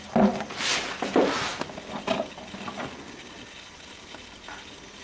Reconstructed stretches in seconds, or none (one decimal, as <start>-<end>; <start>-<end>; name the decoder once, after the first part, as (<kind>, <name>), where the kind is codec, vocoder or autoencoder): none